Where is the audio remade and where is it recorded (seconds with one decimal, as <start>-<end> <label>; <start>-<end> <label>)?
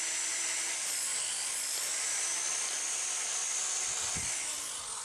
0.0-5.0 recorded